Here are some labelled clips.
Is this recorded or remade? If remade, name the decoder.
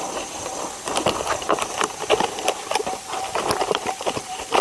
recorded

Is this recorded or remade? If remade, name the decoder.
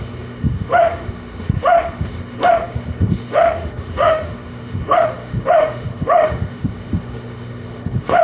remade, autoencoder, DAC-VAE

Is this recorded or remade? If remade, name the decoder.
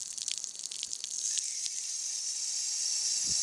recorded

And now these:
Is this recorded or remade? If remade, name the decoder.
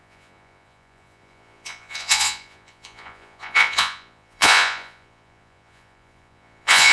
remade, vocoder, Vocos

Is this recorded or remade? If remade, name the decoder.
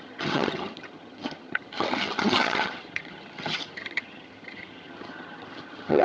remade, vocoder, HiFi-GAN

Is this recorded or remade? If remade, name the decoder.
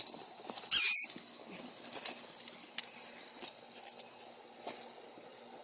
recorded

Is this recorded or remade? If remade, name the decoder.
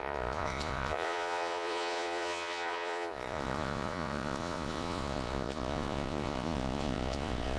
remade, vocoder, Vocos